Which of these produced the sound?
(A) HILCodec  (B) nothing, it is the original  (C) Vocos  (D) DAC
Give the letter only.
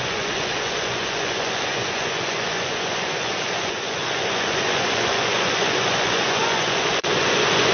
C